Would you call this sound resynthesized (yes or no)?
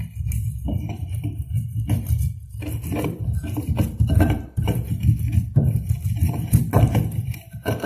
yes